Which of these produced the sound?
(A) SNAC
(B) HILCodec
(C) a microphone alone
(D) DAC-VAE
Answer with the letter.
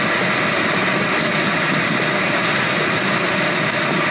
C